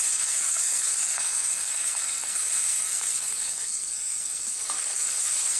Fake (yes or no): yes